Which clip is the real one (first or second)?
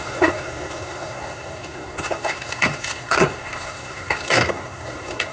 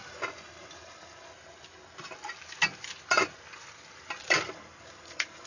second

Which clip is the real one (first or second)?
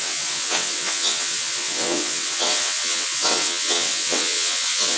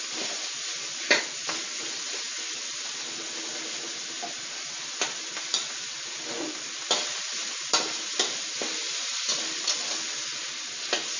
second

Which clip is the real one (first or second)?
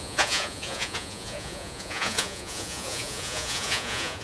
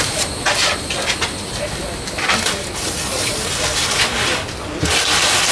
second